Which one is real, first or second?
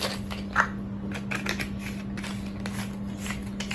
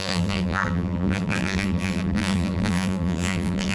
first